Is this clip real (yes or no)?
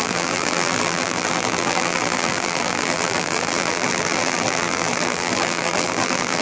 no